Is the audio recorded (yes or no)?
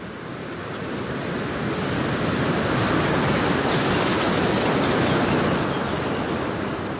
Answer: yes